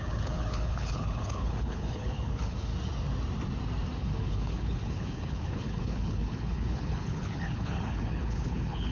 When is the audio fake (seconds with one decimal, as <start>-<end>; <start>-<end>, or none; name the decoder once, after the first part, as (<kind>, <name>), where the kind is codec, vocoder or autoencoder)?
0.0-2.7 (codec, HILCodec); 4.0-8.9